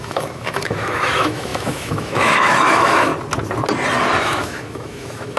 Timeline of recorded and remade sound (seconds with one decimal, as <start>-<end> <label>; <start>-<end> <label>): 0.0-3.1 remade; 3.1-4.2 recorded; 4.2-5.4 remade